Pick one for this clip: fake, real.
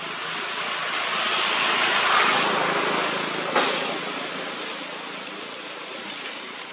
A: real